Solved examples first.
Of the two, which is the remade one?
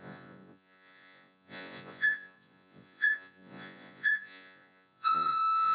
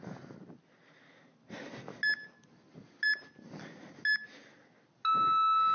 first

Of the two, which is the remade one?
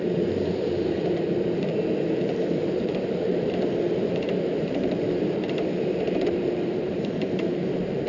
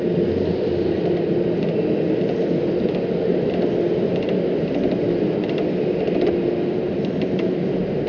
first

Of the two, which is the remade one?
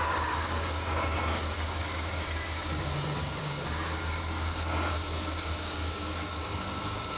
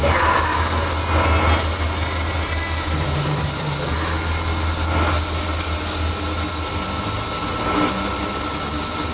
first